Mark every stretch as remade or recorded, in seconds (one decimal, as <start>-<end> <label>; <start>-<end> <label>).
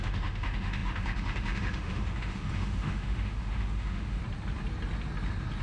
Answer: 0.0-4.2 remade; 4.2-5.6 recorded